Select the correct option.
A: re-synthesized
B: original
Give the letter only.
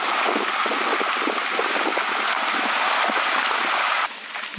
B